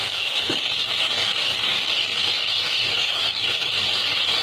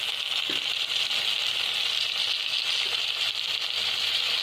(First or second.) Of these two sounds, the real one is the second